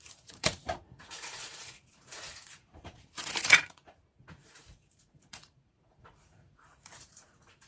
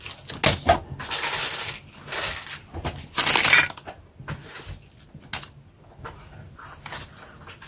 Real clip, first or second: second